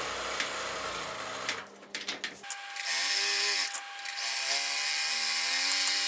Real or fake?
real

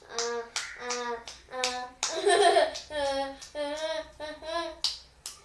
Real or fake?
real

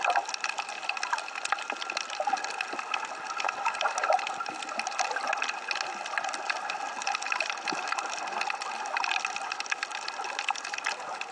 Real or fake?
real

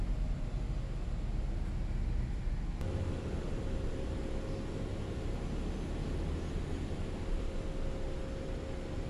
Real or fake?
real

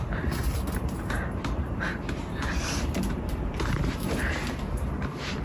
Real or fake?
fake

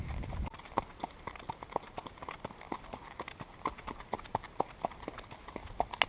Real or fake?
real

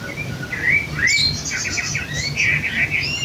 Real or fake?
real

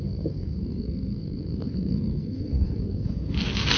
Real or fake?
fake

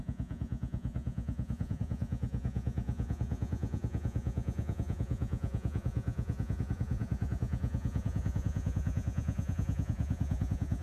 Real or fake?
fake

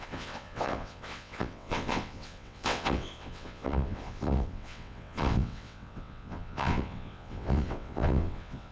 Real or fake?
fake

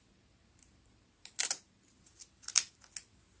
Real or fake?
real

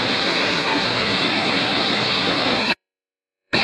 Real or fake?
fake